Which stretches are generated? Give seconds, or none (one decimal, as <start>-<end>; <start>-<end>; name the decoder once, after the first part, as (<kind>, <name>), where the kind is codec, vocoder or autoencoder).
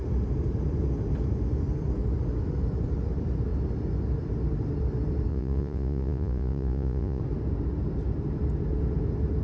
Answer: 5.3-7.2 (vocoder, Vocos)